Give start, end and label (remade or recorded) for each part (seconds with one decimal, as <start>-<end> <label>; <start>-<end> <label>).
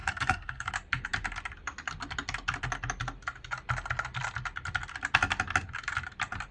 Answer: 0.0-0.7 remade; 0.7-6.5 recorded